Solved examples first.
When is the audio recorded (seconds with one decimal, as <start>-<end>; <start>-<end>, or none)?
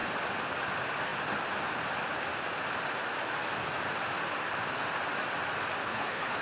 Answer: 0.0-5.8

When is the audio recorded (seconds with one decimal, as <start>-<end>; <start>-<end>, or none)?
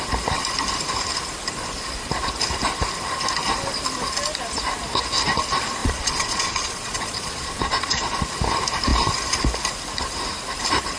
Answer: 0.0-5.8; 8.2-11.0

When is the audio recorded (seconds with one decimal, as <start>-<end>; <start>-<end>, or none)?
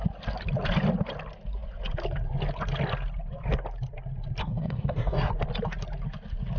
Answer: 0.0-4.4; 5.3-6.6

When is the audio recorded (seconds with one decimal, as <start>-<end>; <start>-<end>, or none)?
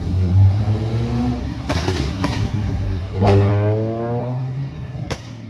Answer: 0.6-1.4; 3.5-4.2